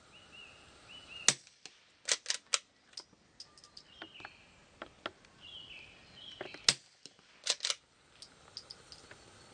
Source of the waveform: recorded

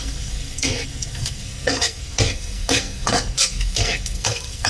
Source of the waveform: remade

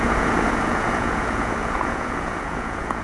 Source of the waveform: remade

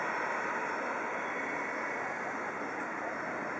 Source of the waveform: remade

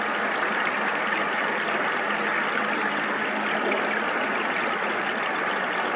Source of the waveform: recorded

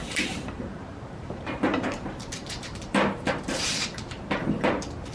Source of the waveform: remade